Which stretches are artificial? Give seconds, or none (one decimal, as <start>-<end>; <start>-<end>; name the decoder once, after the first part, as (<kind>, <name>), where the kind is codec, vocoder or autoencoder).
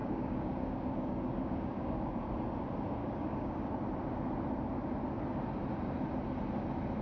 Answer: 0.0-2.3 (codec, DAC); 3.0-3.7